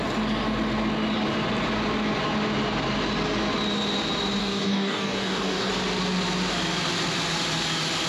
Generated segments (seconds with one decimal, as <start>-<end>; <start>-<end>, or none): 4.4-5.7